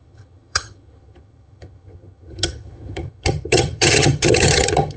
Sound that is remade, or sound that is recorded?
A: remade